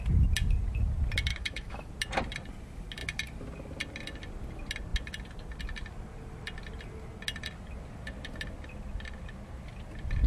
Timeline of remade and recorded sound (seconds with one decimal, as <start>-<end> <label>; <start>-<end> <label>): 0.0-1.3 recorded; 1.3-1.9 remade; 1.9-10.3 recorded